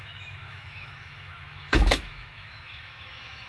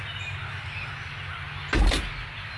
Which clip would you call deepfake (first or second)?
first